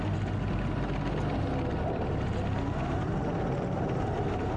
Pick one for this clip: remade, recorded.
recorded